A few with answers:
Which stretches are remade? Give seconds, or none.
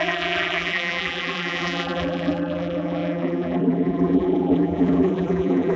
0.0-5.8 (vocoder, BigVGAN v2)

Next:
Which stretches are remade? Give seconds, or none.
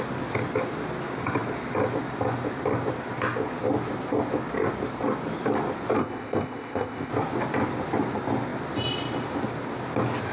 6.0-7.1 (codec, ZipCodec)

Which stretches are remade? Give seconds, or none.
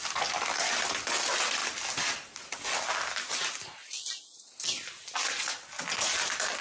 none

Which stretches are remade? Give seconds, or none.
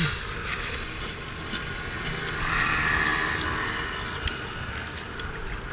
none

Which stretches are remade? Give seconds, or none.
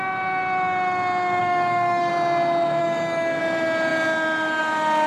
1.4-2.1 (codec, DAC); 2.8-3.4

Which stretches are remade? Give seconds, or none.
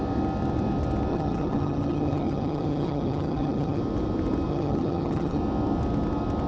1.1-3.8 (vocoder, HiFi-GAN); 4.5-5.4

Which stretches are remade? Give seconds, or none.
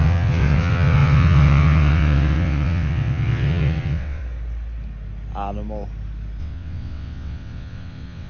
0.0-4.2 (vocoder, WaveNeXt); 6.4-8.3